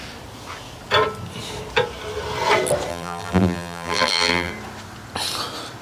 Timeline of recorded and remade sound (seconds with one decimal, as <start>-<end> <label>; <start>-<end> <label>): 0.0-2.9 recorded; 2.9-4.5 remade; 4.5-5.8 recorded